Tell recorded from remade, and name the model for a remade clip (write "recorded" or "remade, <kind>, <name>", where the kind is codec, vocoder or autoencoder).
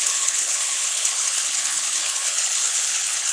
remade, codec, HILCodec